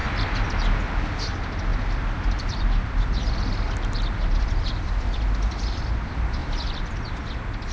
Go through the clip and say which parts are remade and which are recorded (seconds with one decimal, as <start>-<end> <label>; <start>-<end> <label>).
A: 0.0-0.8 remade; 0.8-1.7 recorded; 1.7-6.0 remade; 6.0-6.4 recorded; 6.4-7.1 remade; 7.1-7.7 recorded